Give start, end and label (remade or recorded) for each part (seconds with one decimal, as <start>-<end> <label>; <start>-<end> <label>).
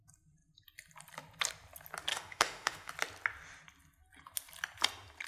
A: 0.0-2.1 recorded; 2.1-2.9 remade; 2.9-5.3 recorded